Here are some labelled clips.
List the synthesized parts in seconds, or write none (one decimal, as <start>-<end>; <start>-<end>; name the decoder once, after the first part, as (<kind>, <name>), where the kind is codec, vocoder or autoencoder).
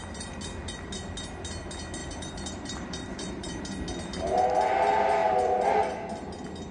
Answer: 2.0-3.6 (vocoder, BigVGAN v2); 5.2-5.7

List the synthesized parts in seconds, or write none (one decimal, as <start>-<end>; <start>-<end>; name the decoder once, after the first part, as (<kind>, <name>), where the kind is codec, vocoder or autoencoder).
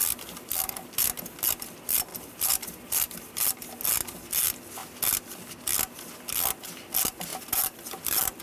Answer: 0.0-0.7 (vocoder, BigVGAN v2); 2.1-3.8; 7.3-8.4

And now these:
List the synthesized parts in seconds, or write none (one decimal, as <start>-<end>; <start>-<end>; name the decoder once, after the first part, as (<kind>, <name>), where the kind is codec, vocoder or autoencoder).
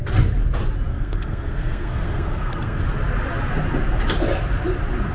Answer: 0.9-2.8 (codec, SNAC)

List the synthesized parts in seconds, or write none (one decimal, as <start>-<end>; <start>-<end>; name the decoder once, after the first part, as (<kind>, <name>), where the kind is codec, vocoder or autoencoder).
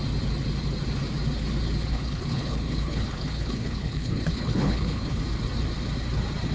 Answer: 1.9-5.2 (codec, HILCodec)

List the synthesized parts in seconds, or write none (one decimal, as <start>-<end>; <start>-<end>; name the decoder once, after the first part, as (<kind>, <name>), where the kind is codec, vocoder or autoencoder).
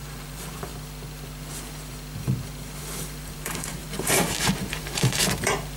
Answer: 0.0-0.7 (vocoder, BigVGAN v2); 2.8-5.8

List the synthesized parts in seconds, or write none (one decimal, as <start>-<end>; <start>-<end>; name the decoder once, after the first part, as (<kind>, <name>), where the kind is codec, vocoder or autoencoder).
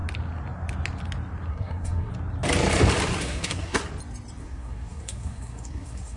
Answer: 1.5-2.1 (codec, SNAC); 3.2-3.8; 4.4-6.2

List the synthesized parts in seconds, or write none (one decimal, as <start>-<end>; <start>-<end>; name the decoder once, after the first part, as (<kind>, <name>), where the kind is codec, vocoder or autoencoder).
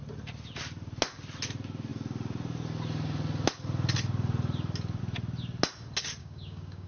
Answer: 6.2-6.9 (codec, DAC)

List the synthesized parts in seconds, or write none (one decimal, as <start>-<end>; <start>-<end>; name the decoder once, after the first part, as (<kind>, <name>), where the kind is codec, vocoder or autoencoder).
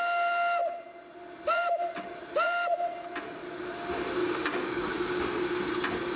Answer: 4.2-5.2 (codec, DAC)